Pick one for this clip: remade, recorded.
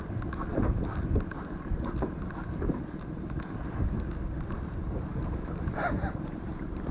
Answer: recorded